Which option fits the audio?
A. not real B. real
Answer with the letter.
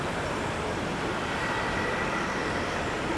A